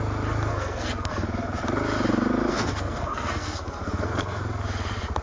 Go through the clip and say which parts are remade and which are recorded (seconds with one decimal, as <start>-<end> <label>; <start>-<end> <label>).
0.0-0.5 recorded; 0.5-1.1 remade; 1.1-2.5 recorded; 2.5-4.4 remade; 4.4-5.2 recorded